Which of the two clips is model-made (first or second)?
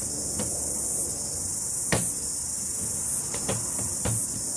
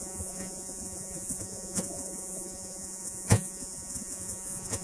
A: second